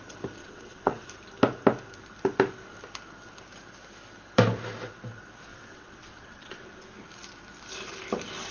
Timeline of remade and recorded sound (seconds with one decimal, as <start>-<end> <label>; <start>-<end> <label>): 0.0-0.4 recorded; 0.4-1.1 remade; 1.1-5.5 recorded; 5.5-7.0 remade; 7.0-8.5 recorded